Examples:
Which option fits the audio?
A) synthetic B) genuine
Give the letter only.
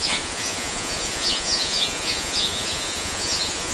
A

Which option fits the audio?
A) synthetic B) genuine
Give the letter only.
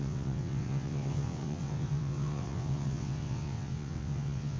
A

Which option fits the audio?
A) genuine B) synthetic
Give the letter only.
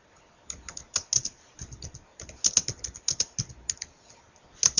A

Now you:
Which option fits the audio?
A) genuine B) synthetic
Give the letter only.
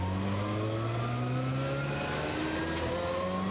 A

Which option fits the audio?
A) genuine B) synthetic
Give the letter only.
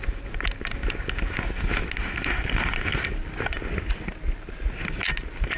A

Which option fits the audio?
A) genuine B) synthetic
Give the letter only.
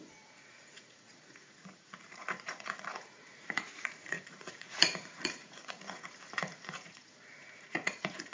B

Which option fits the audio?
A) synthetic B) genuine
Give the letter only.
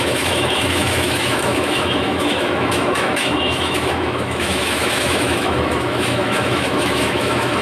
A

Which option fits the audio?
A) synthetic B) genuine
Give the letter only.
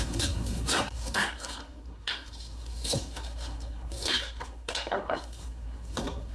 A